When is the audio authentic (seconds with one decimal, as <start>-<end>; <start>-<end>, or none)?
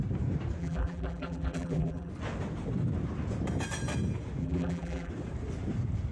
0.0-0.6; 2.1-4.4; 5.1-6.1